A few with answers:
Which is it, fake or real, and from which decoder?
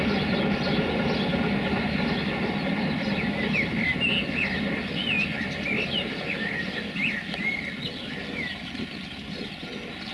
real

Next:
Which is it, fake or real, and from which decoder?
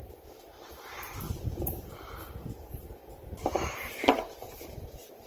fake, vocoder, BigVGAN v2